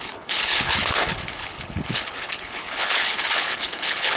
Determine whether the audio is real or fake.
fake